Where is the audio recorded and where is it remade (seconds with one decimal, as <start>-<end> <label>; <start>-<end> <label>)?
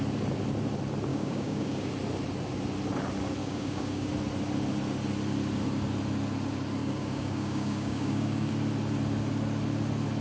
0.0-1.1 recorded; 1.1-1.9 remade; 1.9-3.4 recorded; 3.4-4.1 remade; 4.1-6.8 recorded; 6.8-8.5 remade; 8.5-10.2 recorded